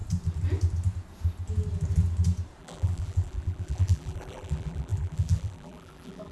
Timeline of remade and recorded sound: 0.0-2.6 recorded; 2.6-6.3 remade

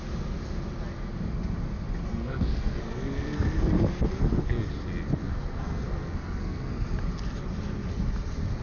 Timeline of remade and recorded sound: 0.0-2.1 recorded; 2.1-4.6 remade; 4.6-5.2 recorded; 5.2-6.9 remade; 6.9-8.6 recorded

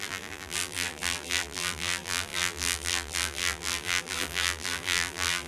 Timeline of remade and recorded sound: 0.0-5.5 remade

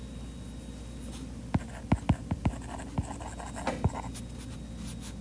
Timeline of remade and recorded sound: 0.0-5.2 recorded